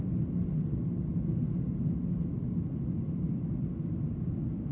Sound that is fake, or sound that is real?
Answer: real